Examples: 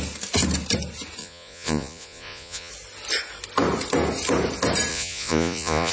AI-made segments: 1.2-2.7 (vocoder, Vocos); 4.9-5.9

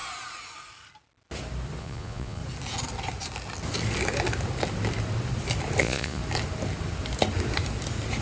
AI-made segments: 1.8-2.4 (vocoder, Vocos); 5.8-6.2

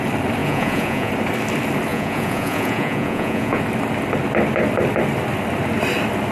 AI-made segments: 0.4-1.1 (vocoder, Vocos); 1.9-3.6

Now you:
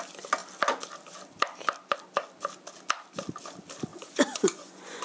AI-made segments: 3.9-5.0 (vocoder, Vocos)

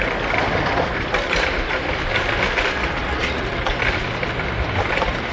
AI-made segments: 3.0-3.6 (vocoder, Vocos)